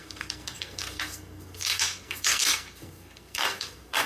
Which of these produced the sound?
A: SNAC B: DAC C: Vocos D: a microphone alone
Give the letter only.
A